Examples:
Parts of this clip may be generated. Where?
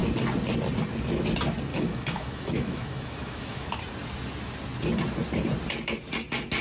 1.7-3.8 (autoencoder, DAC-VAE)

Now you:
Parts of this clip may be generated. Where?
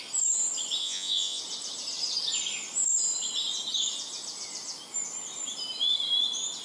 0.8-1.4 (vocoder, Vocos)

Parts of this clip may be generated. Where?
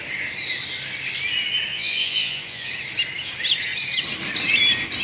1.7-2.7 (vocoder, Vocos)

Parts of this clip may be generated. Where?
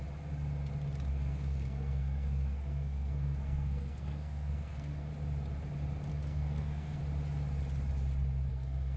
1.1-5.1 (codec, SNAC); 6.1-7.0; 8.5-9.0